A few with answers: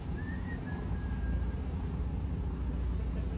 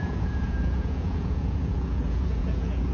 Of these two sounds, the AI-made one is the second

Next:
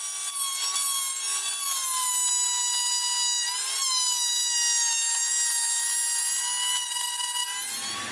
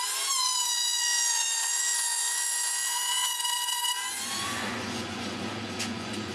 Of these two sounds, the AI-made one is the second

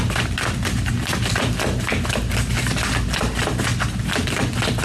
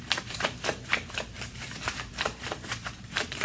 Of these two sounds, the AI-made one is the second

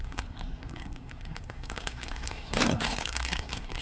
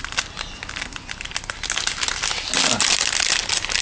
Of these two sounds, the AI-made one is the first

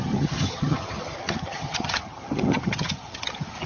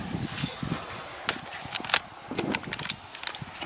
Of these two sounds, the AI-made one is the first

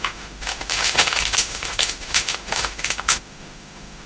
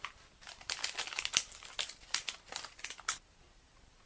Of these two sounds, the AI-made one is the first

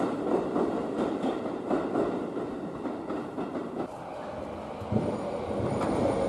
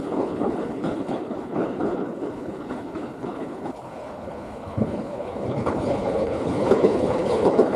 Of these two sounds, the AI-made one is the second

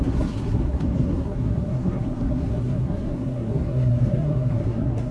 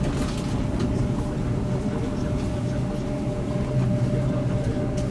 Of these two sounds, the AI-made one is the first